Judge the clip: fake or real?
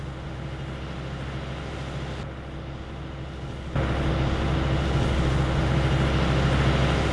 real